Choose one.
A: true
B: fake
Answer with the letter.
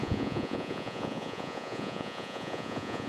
B